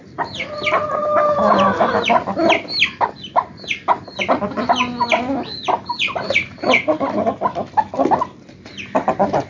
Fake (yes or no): no